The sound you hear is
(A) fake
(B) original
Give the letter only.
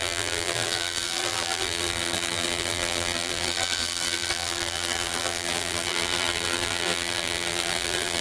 A